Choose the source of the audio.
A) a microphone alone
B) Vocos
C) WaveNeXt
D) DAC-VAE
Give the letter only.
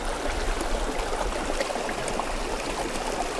A